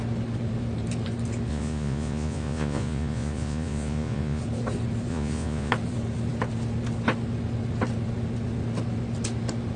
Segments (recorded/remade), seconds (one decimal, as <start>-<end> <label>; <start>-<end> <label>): 0.0-1.5 recorded; 1.5-4.4 remade; 4.4-5.1 recorded; 5.1-5.7 remade; 5.7-9.8 recorded